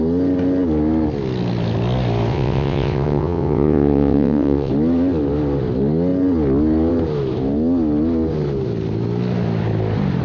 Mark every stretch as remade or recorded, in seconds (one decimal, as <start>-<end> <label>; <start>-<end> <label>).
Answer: 0.0-2.3 recorded; 2.3-4.7 remade; 4.7-10.2 recorded